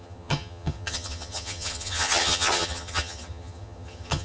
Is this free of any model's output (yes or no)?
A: no